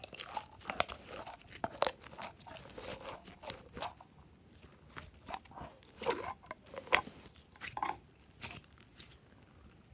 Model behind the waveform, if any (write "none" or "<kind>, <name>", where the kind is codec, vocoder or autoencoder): none